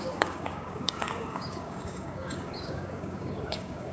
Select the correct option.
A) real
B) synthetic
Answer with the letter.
B